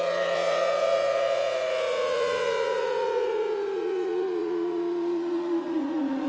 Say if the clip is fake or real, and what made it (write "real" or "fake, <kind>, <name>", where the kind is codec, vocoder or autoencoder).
fake, vocoder, Vocos